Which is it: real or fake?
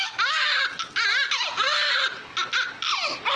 real